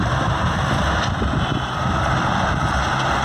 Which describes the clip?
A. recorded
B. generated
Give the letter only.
B